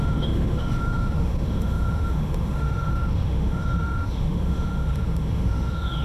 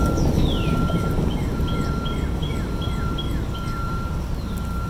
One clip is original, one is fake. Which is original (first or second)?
second